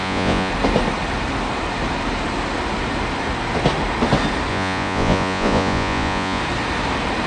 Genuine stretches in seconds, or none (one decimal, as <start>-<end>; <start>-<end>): 0.5-4.5; 6.4-7.3